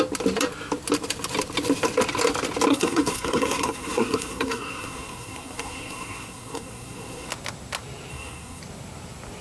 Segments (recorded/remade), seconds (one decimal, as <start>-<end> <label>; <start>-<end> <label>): 0.0-2.7 recorded; 2.7-7.3 remade; 7.3-8.1 recorded; 8.1-8.6 remade; 8.6-9.4 recorded